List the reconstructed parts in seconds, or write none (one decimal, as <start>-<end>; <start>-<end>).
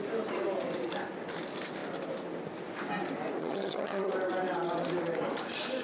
3.4-4.1